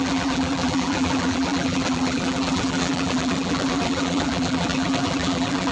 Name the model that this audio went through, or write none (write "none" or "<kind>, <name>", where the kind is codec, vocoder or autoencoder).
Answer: vocoder, BigVGAN v2